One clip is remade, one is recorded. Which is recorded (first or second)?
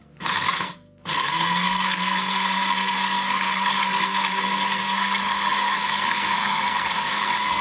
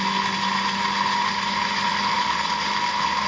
second